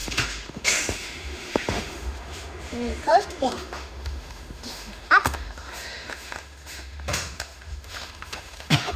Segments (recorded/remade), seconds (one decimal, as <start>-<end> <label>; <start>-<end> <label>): 0.0-9.0 remade